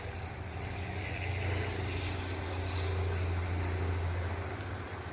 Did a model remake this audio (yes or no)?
no